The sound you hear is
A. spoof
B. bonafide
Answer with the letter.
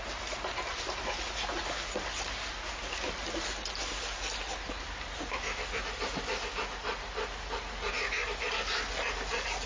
B